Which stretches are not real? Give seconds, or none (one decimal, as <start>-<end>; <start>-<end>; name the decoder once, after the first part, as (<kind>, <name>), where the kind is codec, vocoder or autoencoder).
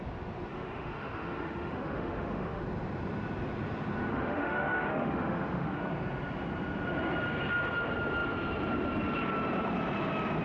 0.5-2.6 (autoencoder, DAC-VAE); 4.1-5.8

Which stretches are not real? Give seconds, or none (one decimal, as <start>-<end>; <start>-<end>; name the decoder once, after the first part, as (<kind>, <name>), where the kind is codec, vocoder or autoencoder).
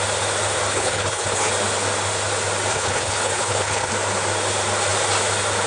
0.7-1.5 (codec, HILCodec); 2.7-3.9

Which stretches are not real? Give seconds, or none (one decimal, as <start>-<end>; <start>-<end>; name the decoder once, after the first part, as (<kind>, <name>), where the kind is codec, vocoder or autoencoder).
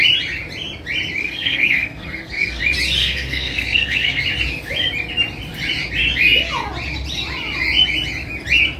1.2-2.6 (codec, SNAC); 3.0-4.2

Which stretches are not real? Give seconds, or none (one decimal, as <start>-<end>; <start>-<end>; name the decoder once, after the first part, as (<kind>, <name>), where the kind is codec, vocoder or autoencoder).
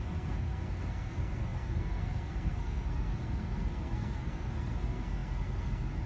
0.0-6.1 (codec, SNAC)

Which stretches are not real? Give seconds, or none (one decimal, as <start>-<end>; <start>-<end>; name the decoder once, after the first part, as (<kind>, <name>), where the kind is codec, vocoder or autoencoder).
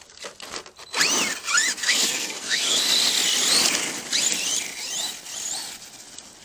1.8-2.8 (codec, SNAC)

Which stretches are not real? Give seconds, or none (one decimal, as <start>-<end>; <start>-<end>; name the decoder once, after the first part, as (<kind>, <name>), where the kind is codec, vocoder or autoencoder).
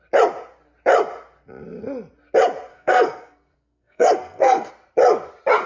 2.7-4.7 (codec, SNAC)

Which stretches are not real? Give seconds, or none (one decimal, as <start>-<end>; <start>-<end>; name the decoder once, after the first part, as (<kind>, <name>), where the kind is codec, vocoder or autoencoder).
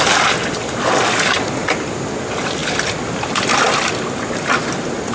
none